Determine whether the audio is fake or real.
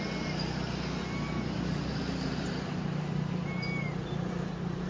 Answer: real